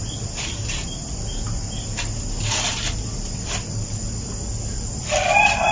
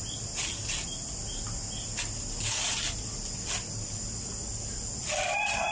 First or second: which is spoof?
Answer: first